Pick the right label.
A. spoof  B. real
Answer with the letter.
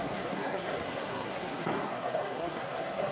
A